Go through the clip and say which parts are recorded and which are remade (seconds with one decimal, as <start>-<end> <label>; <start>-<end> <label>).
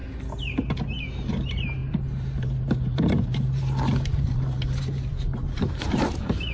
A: 0.0-1.3 recorded; 1.3-6.5 remade